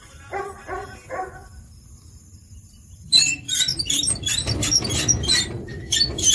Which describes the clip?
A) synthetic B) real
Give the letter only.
A